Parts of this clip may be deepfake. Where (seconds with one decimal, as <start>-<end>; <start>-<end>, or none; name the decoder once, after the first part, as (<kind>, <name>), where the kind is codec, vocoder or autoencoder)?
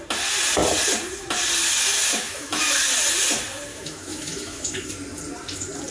2.1-2.6 (autoencoder, DAC-VAE); 3.7-4.9